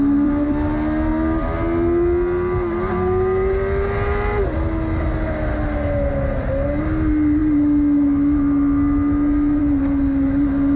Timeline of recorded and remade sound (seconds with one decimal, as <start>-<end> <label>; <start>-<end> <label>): 0.0-10.8 recorded